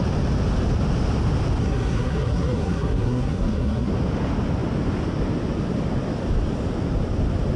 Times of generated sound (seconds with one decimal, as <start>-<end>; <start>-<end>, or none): 1.6-3.9